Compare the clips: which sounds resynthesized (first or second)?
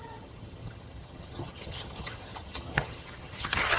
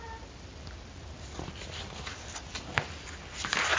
first